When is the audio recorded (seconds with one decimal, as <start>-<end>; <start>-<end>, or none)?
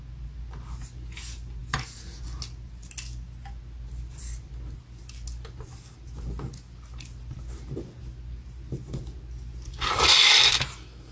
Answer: 0.0-11.1